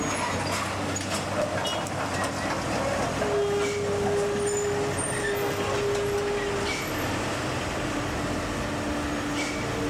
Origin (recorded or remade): recorded